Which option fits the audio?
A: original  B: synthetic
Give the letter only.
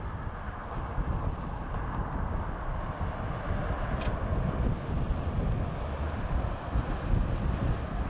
A